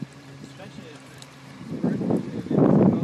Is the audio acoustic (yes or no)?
no